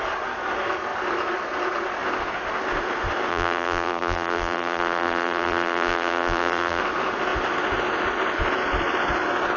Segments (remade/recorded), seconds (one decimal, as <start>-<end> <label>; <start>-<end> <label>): 0.0-3.3 recorded; 3.3-6.8 remade; 6.8-9.6 recorded